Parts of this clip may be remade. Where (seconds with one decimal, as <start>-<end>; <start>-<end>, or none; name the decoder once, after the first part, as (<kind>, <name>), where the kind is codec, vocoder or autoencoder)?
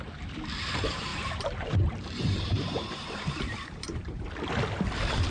1.1-4.3 (vocoder, BigVGAN v2)